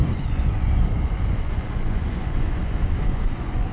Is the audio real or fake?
fake